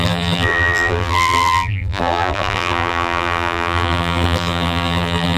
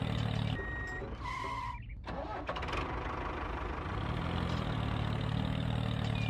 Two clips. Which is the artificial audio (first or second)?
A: first